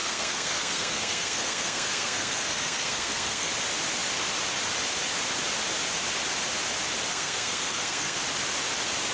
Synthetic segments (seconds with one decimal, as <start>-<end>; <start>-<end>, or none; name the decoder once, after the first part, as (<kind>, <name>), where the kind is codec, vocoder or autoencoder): 0.0-3.5 (codec, SNAC); 7.1-8.2